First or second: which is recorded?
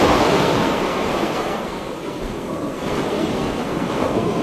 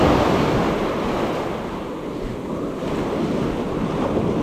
second